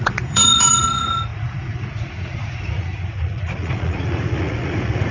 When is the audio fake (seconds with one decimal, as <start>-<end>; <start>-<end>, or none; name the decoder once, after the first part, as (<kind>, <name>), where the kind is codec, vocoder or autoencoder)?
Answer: 0.0-5.1 (vocoder, Vocos)